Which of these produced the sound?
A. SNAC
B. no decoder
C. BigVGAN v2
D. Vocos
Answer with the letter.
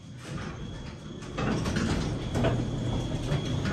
B